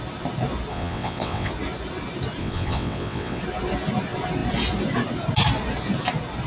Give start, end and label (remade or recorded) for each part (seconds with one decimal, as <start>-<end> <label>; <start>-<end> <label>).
0.0-0.7 recorded; 0.7-1.5 remade; 1.5-2.4 recorded; 2.4-3.4 remade; 3.4-6.5 recorded